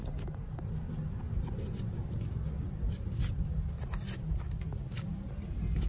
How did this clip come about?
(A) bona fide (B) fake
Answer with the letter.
A